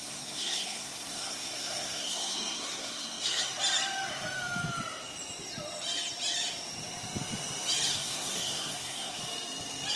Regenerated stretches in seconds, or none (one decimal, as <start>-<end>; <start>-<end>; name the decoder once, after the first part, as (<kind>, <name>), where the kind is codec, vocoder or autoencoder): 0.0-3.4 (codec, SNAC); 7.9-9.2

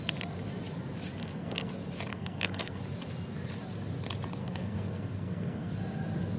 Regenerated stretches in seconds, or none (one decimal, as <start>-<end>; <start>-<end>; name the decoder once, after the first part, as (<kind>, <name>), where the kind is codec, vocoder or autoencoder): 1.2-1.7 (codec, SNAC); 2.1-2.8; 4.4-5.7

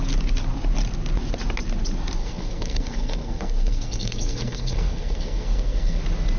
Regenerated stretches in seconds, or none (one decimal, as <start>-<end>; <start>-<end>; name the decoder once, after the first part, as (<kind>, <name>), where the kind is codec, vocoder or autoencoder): 2.2-6.0 (codec, SNAC)

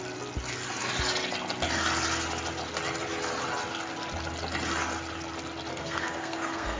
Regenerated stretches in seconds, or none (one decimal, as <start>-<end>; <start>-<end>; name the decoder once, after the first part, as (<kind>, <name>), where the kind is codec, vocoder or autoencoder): 5.7-6.8 (codec, SNAC)